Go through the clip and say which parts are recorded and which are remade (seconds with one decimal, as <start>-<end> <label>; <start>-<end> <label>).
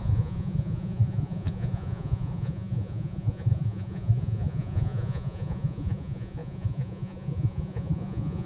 0.0-8.5 remade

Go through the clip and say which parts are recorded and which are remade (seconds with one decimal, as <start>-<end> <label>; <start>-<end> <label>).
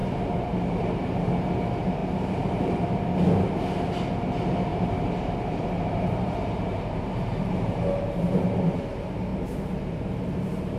0.0-1.1 remade; 1.1-2.0 recorded; 2.0-3.0 remade; 3.0-4.7 recorded; 4.7-8.6 remade; 8.6-9.3 recorded; 9.3-10.8 remade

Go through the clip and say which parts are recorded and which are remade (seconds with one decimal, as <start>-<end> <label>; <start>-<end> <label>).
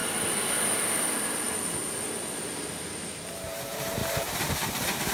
0.0-3.1 recorded; 3.1-5.1 remade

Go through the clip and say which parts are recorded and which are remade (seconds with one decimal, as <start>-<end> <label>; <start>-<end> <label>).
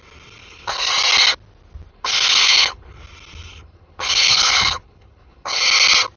0.0-0.4 recorded; 0.4-0.9 remade; 0.9-1.9 recorded; 1.9-3.0 remade; 3.0-3.5 recorded; 3.5-5.6 remade; 5.6-6.2 recorded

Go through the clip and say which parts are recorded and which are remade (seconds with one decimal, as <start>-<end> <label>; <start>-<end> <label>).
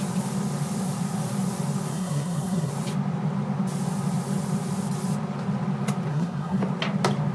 0.0-1.9 recorded; 1.9-2.7 remade; 2.7-6.1 recorded; 6.1-6.6 remade; 6.6-7.3 recorded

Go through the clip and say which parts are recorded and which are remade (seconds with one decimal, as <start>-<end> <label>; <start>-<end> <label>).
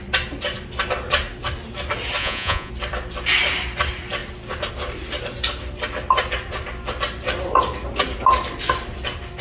0.0-2.2 recorded; 2.2-2.7 remade; 2.7-9.4 recorded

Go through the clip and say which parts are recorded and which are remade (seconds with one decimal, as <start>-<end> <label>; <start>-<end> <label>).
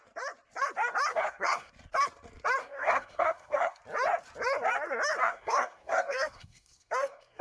0.0-1.1 recorded; 1.1-1.7 remade; 1.7-2.6 recorded; 2.6-3.8 remade; 3.8-5.2 recorded; 5.2-7.4 remade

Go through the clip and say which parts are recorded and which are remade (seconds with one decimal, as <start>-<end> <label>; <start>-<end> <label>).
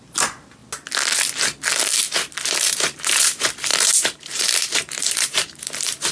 0.0-0.6 remade; 0.6-2.7 recorded; 2.7-6.1 remade